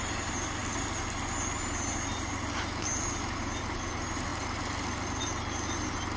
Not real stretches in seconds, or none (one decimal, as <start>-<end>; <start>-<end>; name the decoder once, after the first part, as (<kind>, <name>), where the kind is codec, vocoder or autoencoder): none